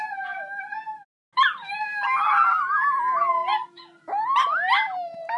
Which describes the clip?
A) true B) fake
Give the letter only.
A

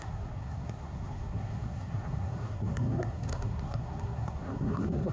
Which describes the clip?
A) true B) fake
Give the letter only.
B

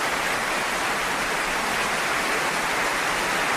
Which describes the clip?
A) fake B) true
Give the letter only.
B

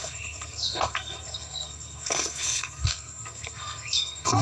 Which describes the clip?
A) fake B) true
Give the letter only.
A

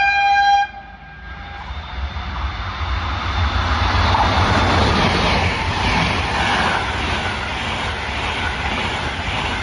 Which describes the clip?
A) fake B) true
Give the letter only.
B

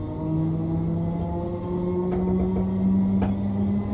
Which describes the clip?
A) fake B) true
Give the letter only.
B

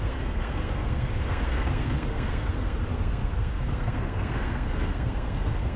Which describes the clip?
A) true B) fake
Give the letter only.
B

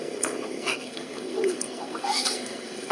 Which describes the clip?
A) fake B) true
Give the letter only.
A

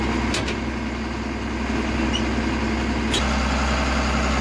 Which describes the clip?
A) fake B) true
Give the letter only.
B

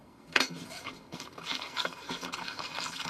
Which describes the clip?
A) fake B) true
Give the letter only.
A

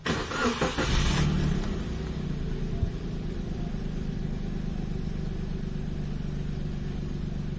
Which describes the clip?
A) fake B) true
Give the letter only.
B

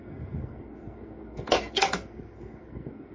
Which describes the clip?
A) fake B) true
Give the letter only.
A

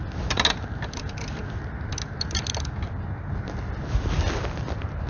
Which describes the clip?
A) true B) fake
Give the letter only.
A